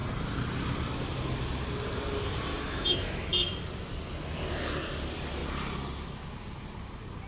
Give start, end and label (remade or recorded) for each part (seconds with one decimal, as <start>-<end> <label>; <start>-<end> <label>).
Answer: 0.0-2.5 recorded; 2.5-3.6 remade; 3.6-7.3 recorded